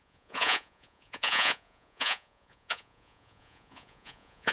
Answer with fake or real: fake